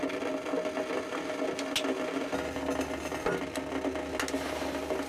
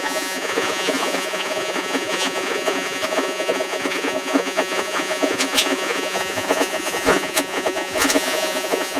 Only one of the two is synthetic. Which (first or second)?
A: second